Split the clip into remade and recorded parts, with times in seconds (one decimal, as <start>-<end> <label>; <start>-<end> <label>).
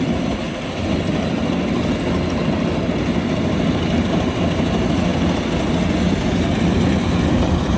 0.0-7.8 recorded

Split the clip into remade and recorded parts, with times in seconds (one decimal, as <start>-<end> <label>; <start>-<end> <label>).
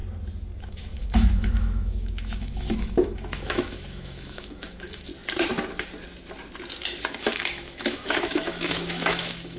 0.0-0.6 recorded; 0.6-5.1 remade; 5.1-7.2 recorded; 7.2-9.6 remade